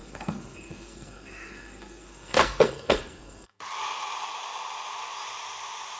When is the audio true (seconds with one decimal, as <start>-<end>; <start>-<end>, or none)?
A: 3.6-6.0